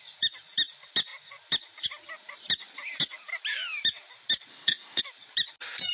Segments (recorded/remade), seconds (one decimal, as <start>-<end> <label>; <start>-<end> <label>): 0.0-4.5 recorded; 4.5-5.0 remade; 5.0-5.9 recorded